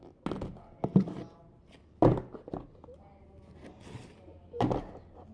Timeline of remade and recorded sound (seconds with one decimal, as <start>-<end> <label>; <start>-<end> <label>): 0.0-5.3 recorded